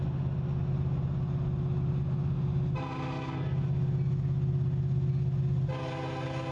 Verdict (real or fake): real